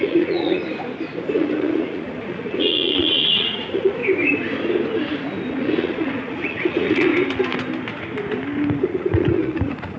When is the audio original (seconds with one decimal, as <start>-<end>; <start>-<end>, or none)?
0.6-1.3; 4.0-5.5; 7.1-8.8